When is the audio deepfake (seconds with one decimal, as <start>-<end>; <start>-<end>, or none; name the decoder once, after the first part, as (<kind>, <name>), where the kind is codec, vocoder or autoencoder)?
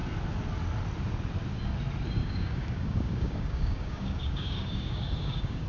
2.2-5.7 (codec, DAC)